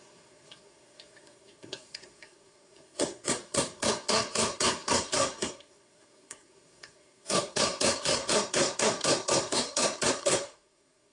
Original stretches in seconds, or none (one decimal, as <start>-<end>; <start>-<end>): none